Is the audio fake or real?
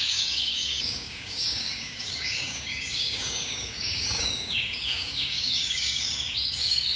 fake